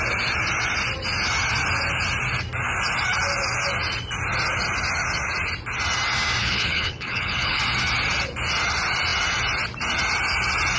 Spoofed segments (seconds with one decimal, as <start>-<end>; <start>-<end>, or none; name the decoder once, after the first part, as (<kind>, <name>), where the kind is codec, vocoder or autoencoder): 6.4-7.6 (codec, HILCodec)